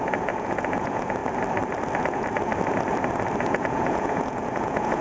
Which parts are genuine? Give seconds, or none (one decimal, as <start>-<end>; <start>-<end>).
1.2-2.0; 2.5-3.4